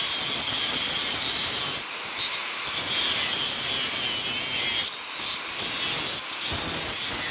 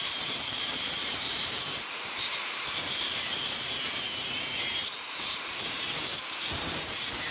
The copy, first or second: second